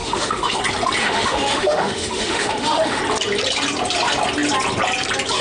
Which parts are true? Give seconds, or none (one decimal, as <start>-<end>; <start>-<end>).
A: 0.6-1.0; 3.0-5.4